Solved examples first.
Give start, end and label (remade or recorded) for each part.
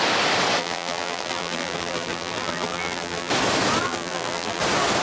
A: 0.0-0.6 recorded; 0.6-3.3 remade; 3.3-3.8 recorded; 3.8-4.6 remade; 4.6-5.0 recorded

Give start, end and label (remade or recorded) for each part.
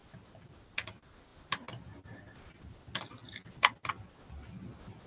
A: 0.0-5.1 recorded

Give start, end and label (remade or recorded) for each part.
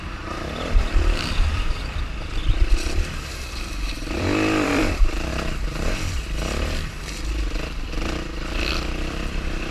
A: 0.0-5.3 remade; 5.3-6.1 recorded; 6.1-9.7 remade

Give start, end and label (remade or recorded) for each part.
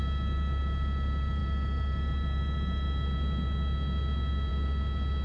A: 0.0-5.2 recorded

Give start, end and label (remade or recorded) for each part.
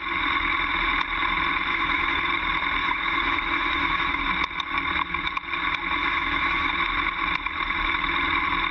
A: 0.0-1.7 recorded; 1.7-2.2 remade; 2.2-2.8 recorded; 2.8-4.2 remade; 4.2-6.0 recorded; 6.0-6.7 remade; 6.7-8.7 recorded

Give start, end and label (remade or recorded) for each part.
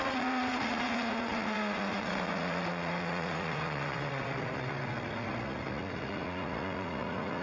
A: 0.0-7.4 remade